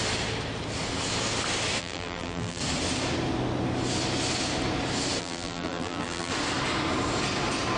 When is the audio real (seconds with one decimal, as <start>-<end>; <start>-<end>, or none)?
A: 0.0-1.8; 2.6-5.2; 6.3-7.8

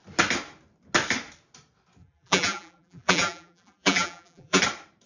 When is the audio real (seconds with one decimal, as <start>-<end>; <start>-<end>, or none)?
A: 0.0-2.0; 4.6-5.1

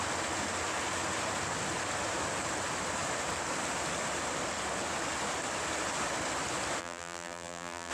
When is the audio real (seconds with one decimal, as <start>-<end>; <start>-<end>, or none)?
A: 0.0-6.8

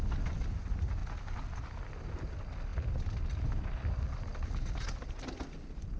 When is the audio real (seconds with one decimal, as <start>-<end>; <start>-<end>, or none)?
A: 0.0-6.0